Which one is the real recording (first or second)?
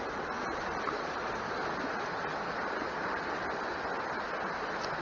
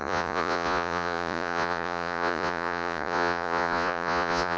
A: first